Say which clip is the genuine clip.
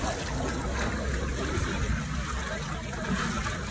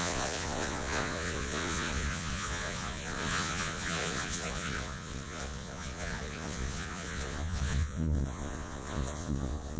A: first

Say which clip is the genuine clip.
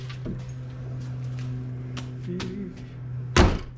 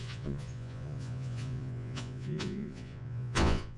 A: first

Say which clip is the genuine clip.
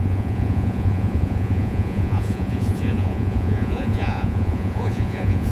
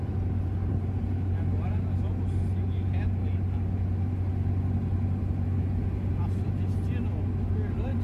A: second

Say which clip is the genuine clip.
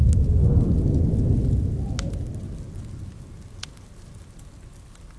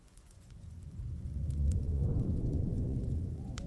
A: first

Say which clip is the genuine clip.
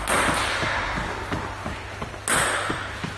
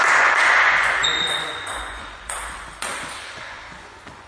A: first